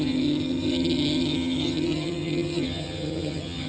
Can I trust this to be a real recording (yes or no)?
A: no